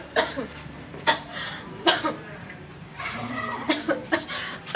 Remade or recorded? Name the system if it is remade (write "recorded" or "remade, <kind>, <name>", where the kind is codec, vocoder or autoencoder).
remade, vocoder, BigVGAN v2